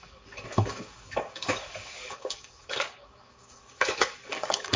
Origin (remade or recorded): remade